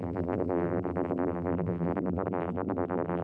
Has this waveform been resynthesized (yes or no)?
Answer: yes